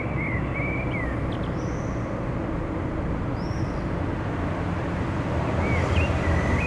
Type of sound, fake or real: real